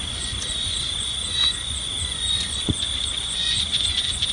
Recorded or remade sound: remade